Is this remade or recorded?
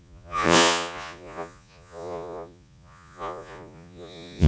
remade